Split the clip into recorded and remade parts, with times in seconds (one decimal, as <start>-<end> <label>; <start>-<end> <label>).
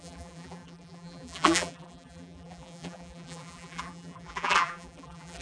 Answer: 0.0-5.4 remade